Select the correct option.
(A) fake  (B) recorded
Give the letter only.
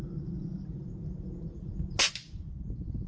B